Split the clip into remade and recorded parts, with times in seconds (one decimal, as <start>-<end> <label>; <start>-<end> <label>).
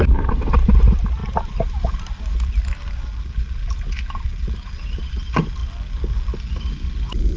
0.0-7.4 recorded